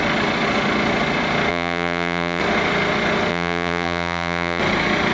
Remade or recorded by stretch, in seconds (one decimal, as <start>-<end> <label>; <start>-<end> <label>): 0.0-1.5 recorded; 1.5-2.4 remade; 2.4-3.3 recorded; 3.3-4.6 remade; 4.6-5.1 recorded